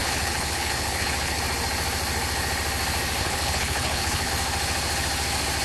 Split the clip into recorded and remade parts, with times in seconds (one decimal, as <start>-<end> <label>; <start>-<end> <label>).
0.0-1.4 remade; 1.4-3.2 recorded; 3.2-4.3 remade; 4.3-5.6 recorded